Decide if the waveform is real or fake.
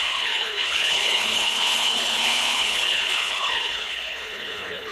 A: fake